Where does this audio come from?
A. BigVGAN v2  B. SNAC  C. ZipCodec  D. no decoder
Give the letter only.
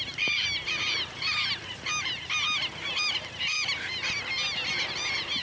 D